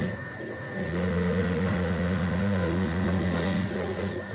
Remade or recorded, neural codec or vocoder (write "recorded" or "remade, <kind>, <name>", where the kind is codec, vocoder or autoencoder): remade, vocoder, Vocos